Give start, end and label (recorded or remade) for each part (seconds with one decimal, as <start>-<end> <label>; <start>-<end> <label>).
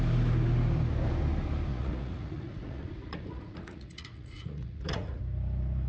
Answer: 0.0-1.7 recorded; 1.7-5.2 remade; 5.2-5.9 recorded